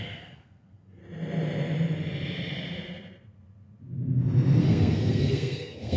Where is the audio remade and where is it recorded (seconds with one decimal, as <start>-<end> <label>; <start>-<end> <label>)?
0.0-1.0 remade; 1.0-4.6 recorded; 4.6-6.0 remade